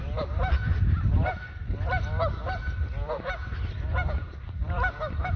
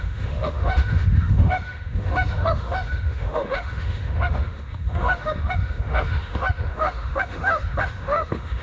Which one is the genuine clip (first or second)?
first